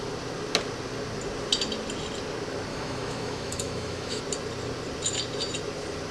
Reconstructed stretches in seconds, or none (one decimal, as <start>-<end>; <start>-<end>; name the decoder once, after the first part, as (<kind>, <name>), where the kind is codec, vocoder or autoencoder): 2.7-4.2 (autoencoder, DAC-VAE)